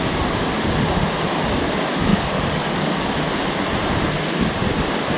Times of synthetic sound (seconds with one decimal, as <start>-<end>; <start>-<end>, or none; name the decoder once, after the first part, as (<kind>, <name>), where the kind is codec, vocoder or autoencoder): 2.1-3.2 (codec, DAC)